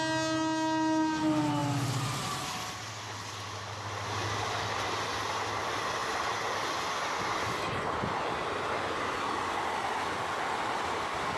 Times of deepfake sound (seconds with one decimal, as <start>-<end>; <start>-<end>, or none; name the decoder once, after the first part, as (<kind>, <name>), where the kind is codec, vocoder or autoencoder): none